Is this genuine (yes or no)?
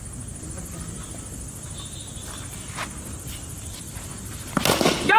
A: yes